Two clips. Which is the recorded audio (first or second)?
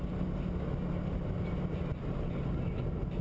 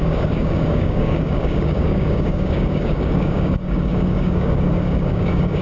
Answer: first